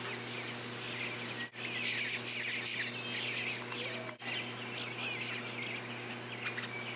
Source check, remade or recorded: recorded